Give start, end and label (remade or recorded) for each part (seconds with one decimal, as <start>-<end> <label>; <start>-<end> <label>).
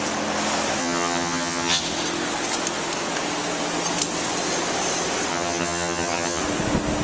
0.0-0.8 recorded; 0.8-1.8 remade; 1.8-5.3 recorded; 5.3-6.4 remade; 6.4-7.0 recorded